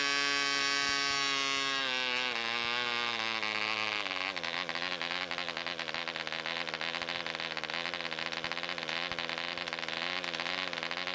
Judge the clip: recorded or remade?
recorded